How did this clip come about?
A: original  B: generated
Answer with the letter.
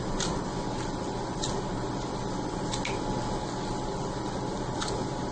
A